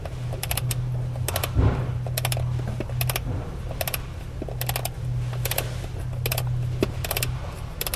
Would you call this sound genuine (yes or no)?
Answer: yes